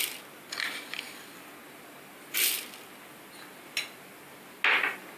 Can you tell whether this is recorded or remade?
recorded